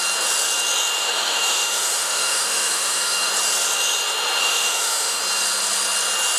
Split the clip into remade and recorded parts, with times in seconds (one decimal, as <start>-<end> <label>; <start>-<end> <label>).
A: 0.0-1.0 recorded; 1.0-3.3 remade; 3.3-4.4 recorded; 4.4-5.2 remade; 5.2-6.4 recorded